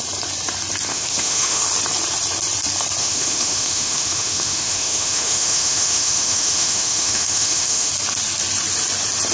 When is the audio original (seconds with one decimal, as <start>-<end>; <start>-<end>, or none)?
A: 0.0-0.9; 1.6-3.0; 7.9-9.3